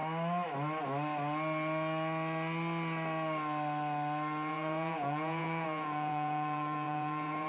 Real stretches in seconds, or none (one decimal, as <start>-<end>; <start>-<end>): 0.0-4.5